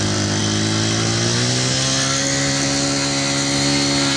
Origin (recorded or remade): recorded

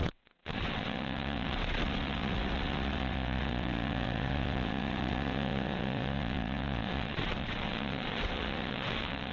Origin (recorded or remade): remade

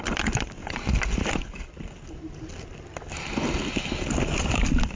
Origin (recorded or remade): recorded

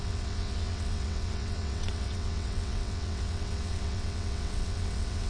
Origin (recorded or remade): remade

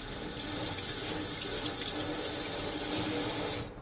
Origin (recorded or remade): recorded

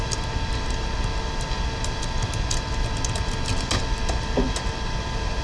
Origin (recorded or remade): recorded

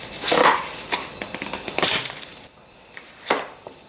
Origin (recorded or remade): recorded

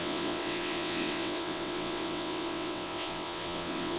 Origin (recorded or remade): remade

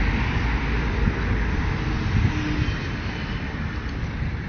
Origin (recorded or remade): recorded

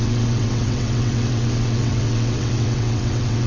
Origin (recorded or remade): remade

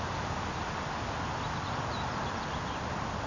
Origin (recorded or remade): recorded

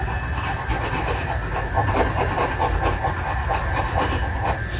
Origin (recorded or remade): recorded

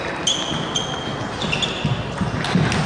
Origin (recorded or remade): recorded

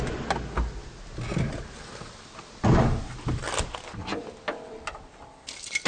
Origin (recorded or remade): recorded